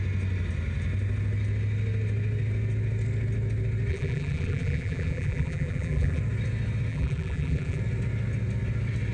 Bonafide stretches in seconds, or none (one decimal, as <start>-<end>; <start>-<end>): 0.0-3.9; 6.2-6.9; 7.8-9.1